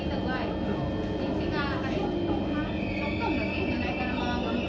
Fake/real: real